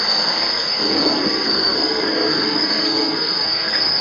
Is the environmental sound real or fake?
fake